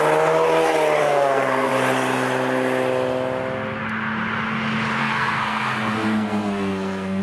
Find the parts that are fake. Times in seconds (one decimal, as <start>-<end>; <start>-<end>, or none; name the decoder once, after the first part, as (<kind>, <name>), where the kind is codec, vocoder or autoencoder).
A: 1.0-1.7 (codec, SNAC); 5.0-7.2